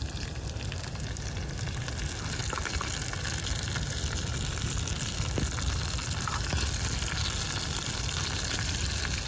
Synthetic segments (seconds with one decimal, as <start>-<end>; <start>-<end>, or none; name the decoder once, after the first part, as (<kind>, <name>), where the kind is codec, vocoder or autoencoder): none